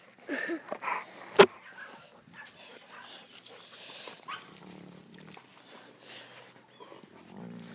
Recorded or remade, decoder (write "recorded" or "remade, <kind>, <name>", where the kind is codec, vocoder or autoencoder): recorded